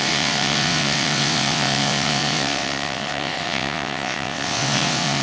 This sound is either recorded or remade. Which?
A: remade